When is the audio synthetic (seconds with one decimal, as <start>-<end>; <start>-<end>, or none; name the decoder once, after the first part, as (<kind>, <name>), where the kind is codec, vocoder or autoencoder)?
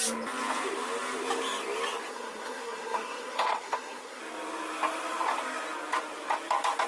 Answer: 2.1-4.2 (codec, SNAC)